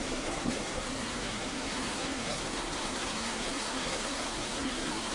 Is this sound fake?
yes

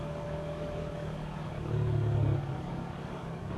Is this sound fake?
yes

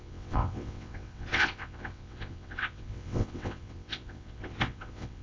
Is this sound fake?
yes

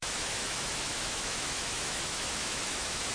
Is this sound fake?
yes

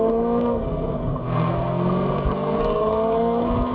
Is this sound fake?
yes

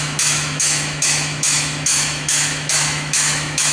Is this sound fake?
yes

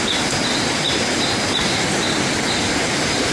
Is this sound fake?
no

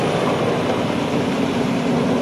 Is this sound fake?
no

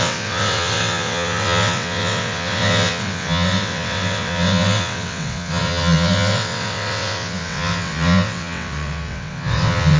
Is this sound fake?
yes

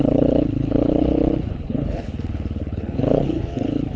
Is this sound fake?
yes